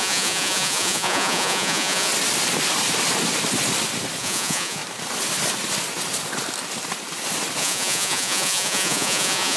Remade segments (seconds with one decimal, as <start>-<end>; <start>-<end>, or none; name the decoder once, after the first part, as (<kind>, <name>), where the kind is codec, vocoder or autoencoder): 0.0-2.1 (vocoder, Vocos); 4.2-4.8; 7.6-9.6